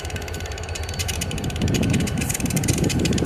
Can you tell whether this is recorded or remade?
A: remade